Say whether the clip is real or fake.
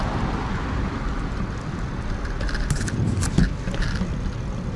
real